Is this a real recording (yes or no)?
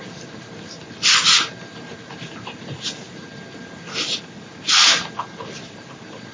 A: yes